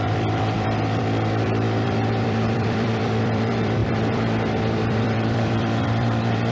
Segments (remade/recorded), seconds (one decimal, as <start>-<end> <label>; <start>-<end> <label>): 0.0-6.5 remade